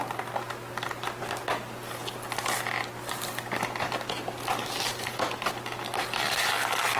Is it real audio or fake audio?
real